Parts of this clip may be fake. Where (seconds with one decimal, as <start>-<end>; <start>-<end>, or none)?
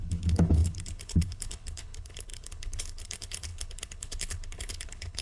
0.0-5.2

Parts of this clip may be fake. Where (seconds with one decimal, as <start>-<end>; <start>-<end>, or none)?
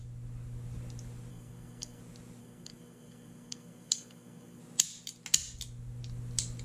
1.3-2.0; 2.4-4.6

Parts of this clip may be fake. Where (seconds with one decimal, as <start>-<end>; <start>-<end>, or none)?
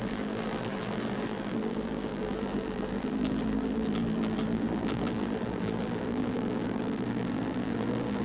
0.0-8.2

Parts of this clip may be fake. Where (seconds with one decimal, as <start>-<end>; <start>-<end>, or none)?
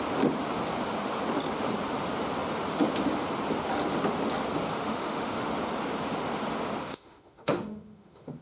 4.7-5.5; 6.9-8.4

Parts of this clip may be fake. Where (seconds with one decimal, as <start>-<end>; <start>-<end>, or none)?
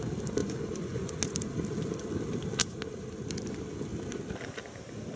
0.4-1.1